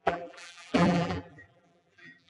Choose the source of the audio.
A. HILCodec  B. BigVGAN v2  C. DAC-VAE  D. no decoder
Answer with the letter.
B